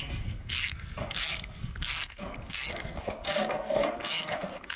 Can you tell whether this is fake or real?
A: fake